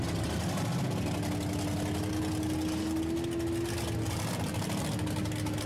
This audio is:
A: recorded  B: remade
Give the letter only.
A